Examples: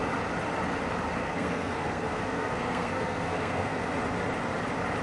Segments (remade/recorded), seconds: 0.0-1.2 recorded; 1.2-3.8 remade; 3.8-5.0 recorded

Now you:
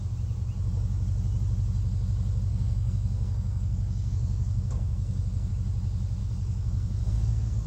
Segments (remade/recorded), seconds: 0.0-2.5 recorded; 2.5-5.5 remade; 5.5-6.2 recorded; 6.2-7.7 remade

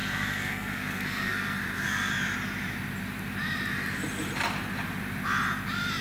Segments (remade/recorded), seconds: 0.0-2.1 remade; 2.1-6.0 recorded

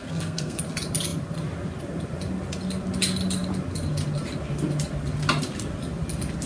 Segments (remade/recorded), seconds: 0.0-0.6 remade; 0.6-6.5 recorded